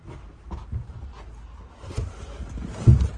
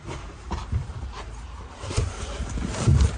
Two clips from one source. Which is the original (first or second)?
first